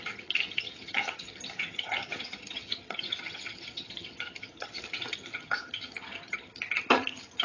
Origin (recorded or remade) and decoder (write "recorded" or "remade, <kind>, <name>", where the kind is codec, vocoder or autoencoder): remade, vocoder, HiFi-GAN